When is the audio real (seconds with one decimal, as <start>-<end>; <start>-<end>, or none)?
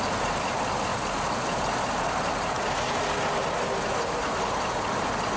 0.0-0.9; 2.3-5.4